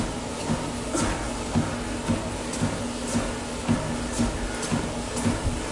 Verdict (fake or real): real